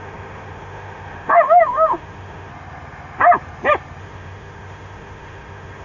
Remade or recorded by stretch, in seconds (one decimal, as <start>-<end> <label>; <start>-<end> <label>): 0.0-2.5 remade; 2.5-4.0 recorded; 4.0-5.8 remade

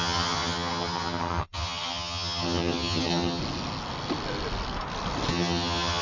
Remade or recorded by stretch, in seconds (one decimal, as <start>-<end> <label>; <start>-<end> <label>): 0.0-3.4 remade; 3.4-5.3 recorded; 5.3-6.0 remade

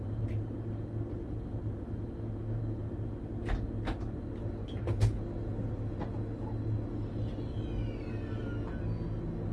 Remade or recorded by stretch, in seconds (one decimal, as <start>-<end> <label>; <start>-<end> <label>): 0.0-4.6 recorded; 4.6-5.2 remade; 5.2-9.5 recorded

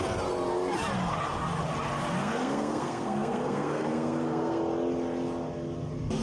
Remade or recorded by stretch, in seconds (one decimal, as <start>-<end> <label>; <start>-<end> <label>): 0.0-2.2 recorded; 2.2-4.6 remade; 4.6-6.2 recorded

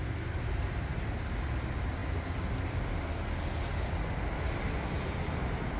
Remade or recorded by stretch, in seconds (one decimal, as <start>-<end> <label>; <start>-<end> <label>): 0.0-5.8 recorded